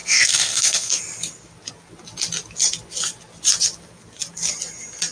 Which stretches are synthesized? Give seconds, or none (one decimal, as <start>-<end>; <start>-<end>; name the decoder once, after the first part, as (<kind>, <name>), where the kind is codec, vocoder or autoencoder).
0.0-1.0 (codec, SNAC)